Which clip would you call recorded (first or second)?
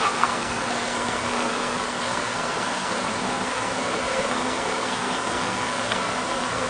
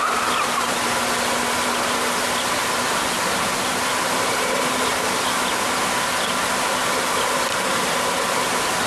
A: second